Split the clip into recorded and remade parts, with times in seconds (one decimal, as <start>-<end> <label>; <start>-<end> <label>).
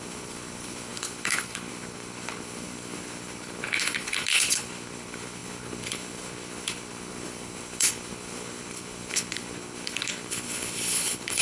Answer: 0.0-11.4 remade